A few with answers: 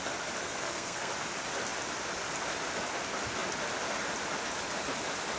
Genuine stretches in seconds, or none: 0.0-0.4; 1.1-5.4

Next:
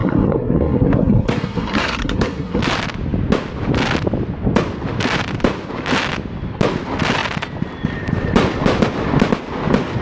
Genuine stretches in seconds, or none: 2.6-10.0